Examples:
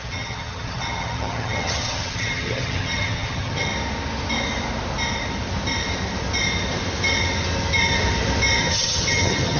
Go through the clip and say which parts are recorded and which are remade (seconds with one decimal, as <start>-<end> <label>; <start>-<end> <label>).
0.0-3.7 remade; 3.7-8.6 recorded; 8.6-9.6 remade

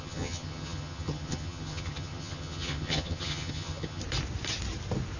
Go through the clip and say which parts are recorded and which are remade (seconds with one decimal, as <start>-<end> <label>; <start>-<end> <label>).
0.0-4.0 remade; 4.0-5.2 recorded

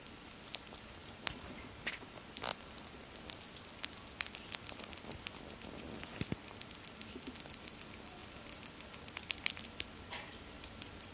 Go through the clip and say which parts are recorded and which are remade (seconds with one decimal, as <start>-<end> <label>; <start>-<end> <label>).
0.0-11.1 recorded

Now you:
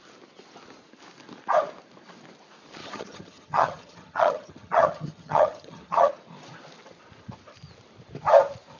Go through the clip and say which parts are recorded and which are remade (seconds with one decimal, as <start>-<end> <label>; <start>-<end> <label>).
0.0-2.8 recorded; 2.8-6.1 remade; 6.1-8.8 recorded

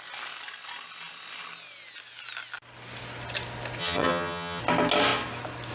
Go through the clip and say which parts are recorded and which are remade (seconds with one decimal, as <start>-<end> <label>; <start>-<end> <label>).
0.0-3.8 recorded; 3.8-4.6 remade; 4.6-5.7 recorded